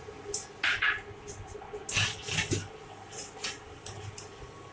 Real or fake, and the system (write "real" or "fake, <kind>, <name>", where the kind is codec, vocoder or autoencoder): real